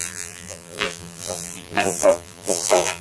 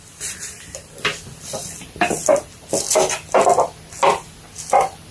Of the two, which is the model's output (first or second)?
first